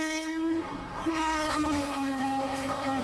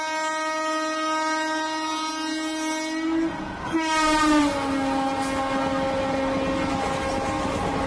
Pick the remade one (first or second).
first